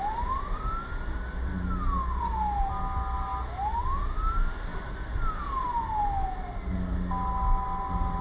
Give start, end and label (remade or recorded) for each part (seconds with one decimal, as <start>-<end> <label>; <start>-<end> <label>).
0.0-8.2 recorded